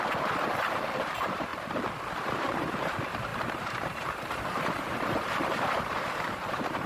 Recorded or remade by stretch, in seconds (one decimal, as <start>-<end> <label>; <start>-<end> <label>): 0.0-1.5 remade; 1.5-2.2 recorded; 2.2-6.9 remade